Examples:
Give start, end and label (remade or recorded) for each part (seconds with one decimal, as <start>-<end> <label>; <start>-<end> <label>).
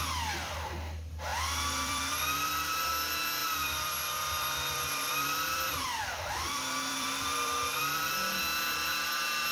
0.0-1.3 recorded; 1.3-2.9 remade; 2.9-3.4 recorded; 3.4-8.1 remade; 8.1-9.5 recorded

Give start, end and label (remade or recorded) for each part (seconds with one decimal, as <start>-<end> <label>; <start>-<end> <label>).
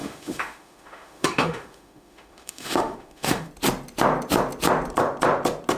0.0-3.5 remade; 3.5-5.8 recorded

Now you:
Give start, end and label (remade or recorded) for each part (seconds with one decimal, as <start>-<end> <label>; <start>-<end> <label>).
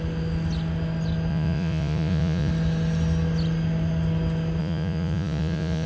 0.0-1.3 recorded; 1.3-2.5 remade; 2.5-4.6 recorded; 4.6-5.9 remade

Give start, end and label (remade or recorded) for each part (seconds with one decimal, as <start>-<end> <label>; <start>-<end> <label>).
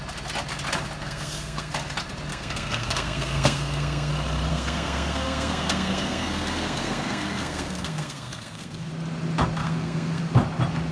0.0-1.0 recorded; 1.0-1.7 remade; 1.7-2.3 recorded; 2.3-4.1 remade; 4.1-4.5 recorded; 4.5-8.9 remade; 8.9-9.6 recorded; 9.6-10.2 remade; 10.2-10.9 recorded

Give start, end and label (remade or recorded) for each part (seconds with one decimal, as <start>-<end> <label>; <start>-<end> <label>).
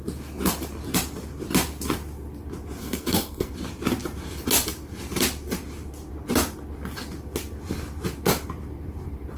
0.0-2.8 recorded; 2.8-3.5 remade; 3.5-9.4 recorded